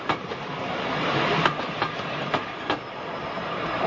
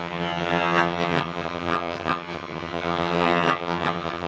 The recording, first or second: first